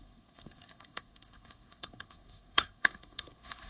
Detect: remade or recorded remade